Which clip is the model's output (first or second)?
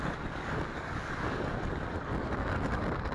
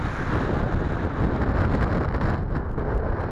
first